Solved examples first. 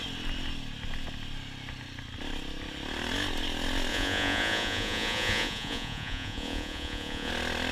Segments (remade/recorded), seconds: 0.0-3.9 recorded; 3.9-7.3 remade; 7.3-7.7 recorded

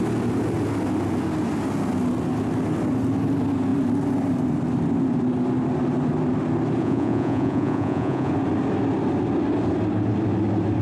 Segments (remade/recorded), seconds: 0.0-6.8 recorded; 6.8-8.3 remade; 8.3-10.8 recorded